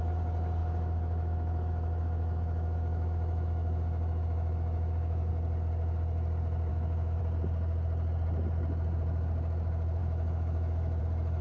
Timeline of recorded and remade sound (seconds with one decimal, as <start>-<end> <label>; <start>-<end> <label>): 0.0-0.6 recorded; 0.6-5.3 remade; 5.3-6.7 recorded; 6.7-7.2 remade; 7.2-10.0 recorded; 10.0-11.0 remade; 11.0-11.4 recorded